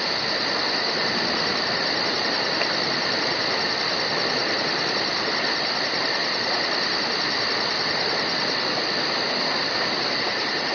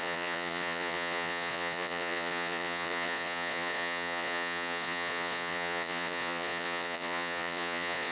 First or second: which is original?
first